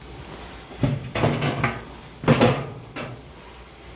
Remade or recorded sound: recorded